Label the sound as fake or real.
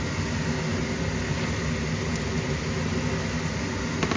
real